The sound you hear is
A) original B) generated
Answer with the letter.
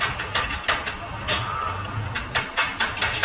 A